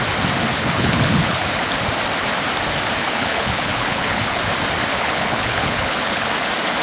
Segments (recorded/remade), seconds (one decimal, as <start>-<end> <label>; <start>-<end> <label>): 0.0-0.5 recorded; 0.5-1.6 remade; 1.6-3.0 recorded; 3.0-4.4 remade; 4.4-4.9 recorded; 4.9-6.3 remade; 6.3-6.8 recorded